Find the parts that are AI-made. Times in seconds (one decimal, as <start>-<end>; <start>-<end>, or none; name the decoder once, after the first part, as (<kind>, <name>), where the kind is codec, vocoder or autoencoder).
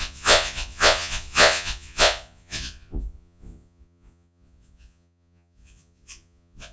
0.0-6.7 (vocoder, Vocos)